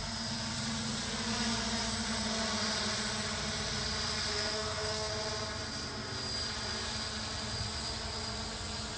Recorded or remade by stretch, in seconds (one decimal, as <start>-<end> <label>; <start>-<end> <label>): 0.0-4.3 recorded; 4.3-5.1 remade; 5.1-9.0 recorded